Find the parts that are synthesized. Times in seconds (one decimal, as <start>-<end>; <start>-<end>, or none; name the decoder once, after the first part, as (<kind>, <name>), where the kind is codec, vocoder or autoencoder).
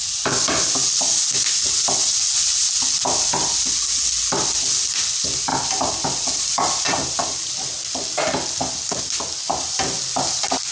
none